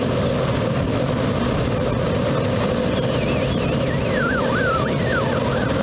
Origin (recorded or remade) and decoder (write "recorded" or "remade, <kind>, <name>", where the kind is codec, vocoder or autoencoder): recorded